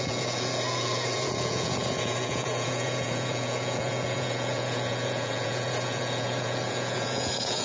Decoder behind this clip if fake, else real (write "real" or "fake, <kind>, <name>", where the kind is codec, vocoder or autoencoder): fake, vocoder, Vocos